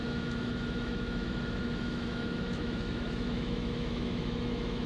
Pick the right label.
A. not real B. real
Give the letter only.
A